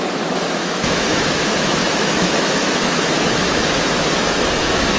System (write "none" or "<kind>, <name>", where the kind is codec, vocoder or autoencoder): autoencoder, DAC-VAE